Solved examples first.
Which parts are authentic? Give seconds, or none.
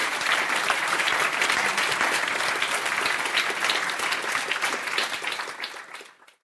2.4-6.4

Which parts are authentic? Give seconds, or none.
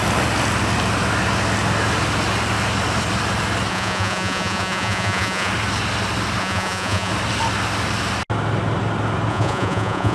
0.0-3.7; 5.5-6.4; 7.1-9.3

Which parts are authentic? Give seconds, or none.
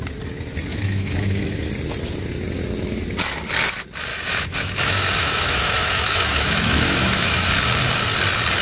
0.0-0.7; 1.7-4.1; 7.5-8.6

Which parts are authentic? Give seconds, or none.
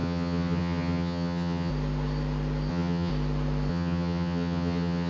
1.7-2.7; 3.1-3.7